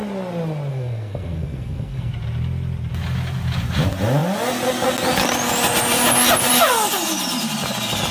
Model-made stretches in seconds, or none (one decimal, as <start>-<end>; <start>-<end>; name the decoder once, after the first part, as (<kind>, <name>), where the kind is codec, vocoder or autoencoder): 0.7-2.1 (codec, SNAC)